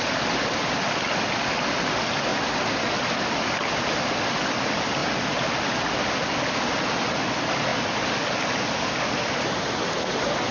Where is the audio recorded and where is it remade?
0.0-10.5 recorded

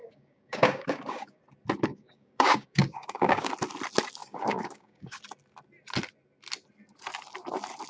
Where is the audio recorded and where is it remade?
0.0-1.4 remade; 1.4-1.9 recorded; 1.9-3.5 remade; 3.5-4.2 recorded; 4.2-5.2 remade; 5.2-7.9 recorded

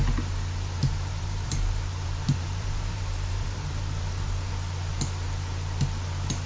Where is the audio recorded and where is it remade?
0.0-0.8 recorded; 0.8-4.5 remade; 4.5-6.5 recorded

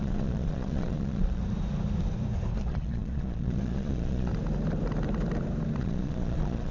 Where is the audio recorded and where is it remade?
0.0-1.4 remade; 1.4-2.6 recorded; 2.6-4.3 remade; 4.3-5.8 recorded; 5.8-6.7 remade